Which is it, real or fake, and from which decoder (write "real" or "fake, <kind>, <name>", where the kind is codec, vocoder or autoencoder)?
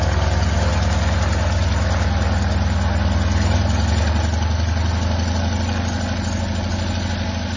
real